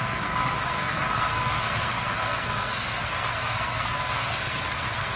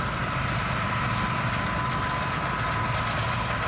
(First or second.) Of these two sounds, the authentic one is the second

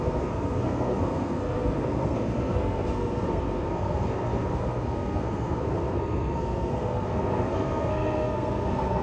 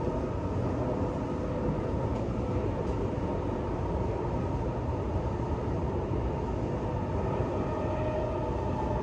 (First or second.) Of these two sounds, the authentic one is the second